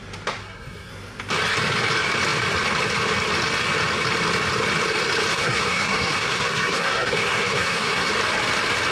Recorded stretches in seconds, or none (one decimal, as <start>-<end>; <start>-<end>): 0.0-0.4; 0.9-5.3; 8.1-8.9